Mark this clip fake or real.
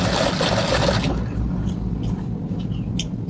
real